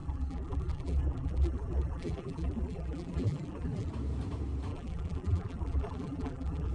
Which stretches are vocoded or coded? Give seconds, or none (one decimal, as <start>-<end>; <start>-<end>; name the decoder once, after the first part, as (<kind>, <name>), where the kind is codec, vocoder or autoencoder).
0.0-3.9 (vocoder, BigVGAN v2); 4.7-6.7